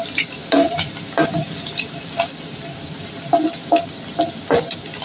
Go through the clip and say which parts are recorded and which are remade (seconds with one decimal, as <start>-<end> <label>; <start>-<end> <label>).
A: 0.0-0.4 recorded; 0.4-3.4 remade; 3.4-5.0 recorded